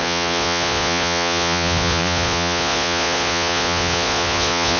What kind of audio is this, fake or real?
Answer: fake